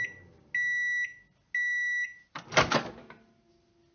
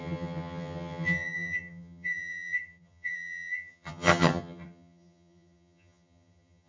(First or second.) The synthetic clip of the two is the second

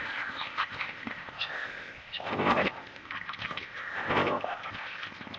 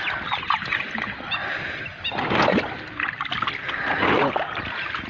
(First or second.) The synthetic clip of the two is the first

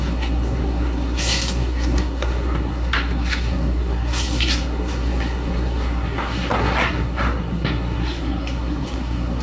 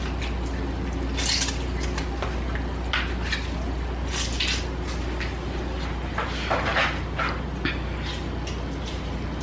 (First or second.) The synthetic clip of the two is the first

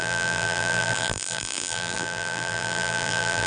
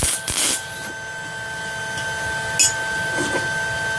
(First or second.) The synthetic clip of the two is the first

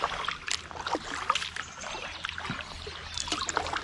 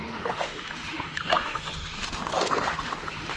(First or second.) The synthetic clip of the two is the second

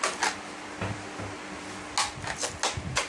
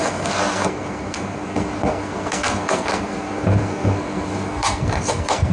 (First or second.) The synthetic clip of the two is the second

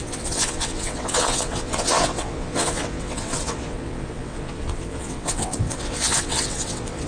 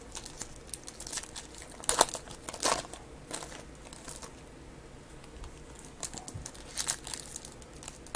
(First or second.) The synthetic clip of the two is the first